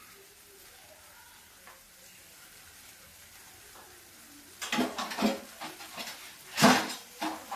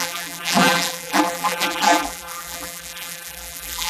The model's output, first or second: second